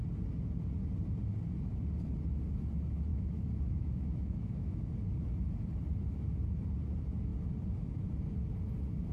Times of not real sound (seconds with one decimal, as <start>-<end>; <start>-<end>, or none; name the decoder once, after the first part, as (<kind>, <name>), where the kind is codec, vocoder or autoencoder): 3.1-4.8 (autoencoder, DAC-VAE)

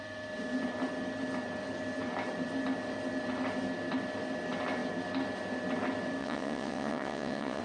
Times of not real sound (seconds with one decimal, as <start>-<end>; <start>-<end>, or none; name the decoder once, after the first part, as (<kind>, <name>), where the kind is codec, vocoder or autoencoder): 6.2-7.6 (vocoder, WaveNeXt)

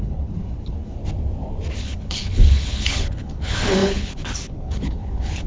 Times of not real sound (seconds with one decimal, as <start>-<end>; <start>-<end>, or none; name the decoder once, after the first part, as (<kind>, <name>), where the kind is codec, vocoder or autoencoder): 0.0-1.0 (codec, HILCodec); 1.8-5.5

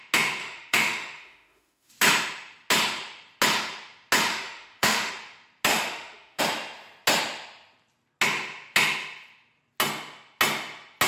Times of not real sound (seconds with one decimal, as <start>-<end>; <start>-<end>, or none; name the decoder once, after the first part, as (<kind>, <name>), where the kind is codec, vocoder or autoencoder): 0.4-1.9 (autoencoder, DAC-VAE); 4.3-5.1; 5.7-6.4

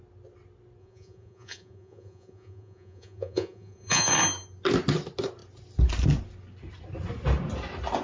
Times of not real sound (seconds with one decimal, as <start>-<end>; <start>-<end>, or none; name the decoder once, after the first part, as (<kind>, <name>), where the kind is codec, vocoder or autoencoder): 0.8-4.1 (vocoder, Vocos)

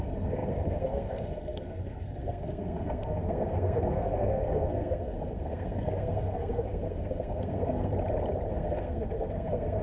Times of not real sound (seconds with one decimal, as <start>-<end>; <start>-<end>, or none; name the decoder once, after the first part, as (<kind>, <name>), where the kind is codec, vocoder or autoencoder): 0.0-7.9 (codec, SNAC); 8.5-9.8

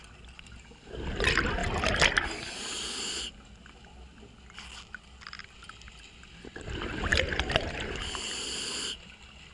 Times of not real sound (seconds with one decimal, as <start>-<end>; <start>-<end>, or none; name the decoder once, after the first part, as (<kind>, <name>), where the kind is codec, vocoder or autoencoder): none

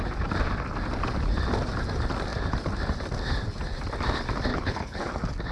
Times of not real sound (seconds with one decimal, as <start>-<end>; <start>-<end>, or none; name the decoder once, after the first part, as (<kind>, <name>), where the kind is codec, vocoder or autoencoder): 4.5-5.1 (codec, HILCodec)